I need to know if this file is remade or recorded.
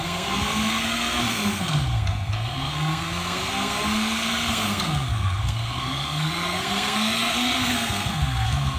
remade